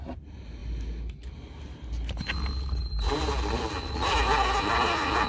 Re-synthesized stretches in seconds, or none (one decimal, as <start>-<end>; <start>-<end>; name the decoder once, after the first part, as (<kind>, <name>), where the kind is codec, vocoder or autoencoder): none